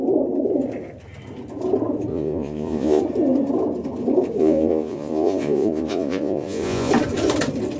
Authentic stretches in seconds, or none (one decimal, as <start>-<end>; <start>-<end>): 0.0-2.1; 3.0-4.4; 6.9-7.8